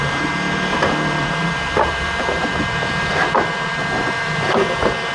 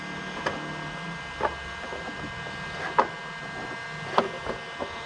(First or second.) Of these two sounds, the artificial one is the first